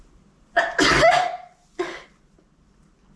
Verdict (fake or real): real